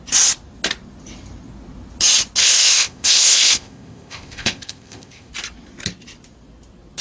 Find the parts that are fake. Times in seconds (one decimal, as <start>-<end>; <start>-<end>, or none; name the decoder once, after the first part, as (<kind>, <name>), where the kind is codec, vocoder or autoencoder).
2.4-5.3 (codec, ZipCodec)